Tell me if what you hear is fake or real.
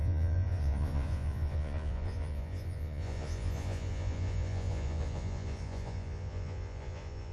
fake